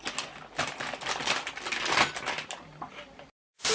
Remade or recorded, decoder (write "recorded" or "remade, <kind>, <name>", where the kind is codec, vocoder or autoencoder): recorded